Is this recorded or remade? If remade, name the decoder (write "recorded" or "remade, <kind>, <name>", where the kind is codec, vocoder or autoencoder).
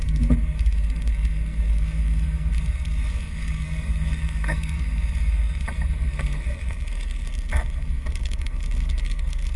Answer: remade, codec, SNAC